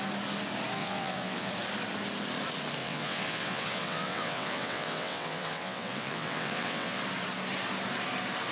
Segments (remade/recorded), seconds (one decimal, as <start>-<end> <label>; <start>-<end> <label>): 0.0-0.8 recorded; 0.8-1.5 remade; 1.5-2.8 recorded; 2.8-7.0 remade; 7.0-8.5 recorded